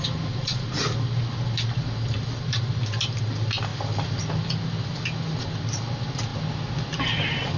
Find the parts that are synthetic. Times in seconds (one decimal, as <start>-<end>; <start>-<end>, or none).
none

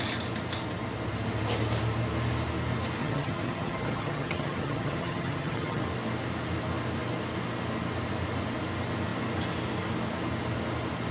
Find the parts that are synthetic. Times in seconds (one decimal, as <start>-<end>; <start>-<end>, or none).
3.0-5.8

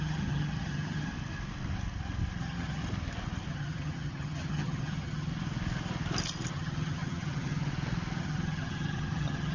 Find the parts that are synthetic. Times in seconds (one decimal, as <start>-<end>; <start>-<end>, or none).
0.0-1.1; 2.4-2.8; 3.5-5.3; 6.5-7.7; 8.2-9.5

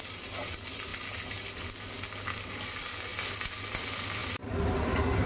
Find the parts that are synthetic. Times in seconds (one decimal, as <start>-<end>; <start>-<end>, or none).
none

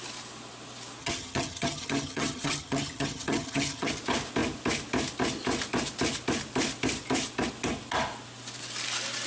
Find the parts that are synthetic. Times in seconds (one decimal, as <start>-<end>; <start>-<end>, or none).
1.0-3.9

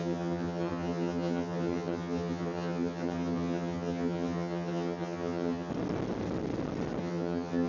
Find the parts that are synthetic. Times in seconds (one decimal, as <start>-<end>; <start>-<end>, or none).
0.0-5.7; 7.0-7.7

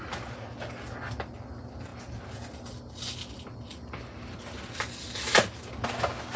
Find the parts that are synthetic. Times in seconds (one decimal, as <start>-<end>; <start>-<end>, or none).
none